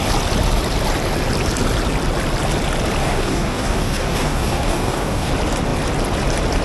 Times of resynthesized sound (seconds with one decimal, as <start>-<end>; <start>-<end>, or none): 3.0-5.3